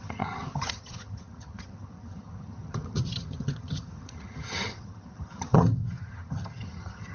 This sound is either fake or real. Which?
fake